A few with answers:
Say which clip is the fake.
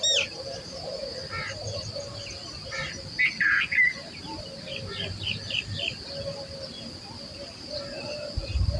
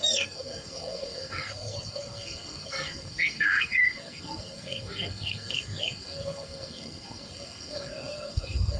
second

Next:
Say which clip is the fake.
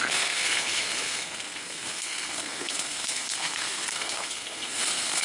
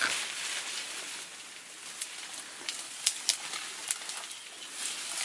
first